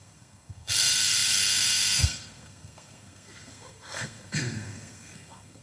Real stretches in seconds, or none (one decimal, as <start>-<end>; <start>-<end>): none